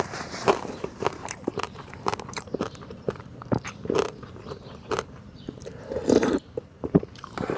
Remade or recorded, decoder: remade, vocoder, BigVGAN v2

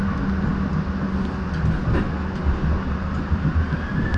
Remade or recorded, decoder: recorded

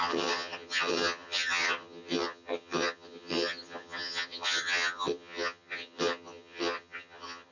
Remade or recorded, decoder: remade, vocoder, HiFi-GAN